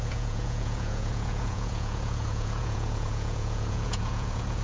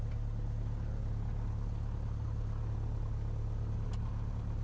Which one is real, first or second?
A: second